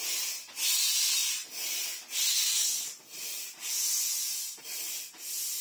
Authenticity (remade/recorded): recorded